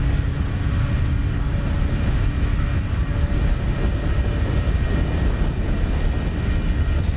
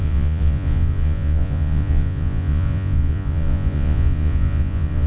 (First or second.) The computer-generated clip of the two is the second